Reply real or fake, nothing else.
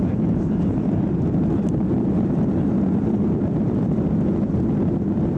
fake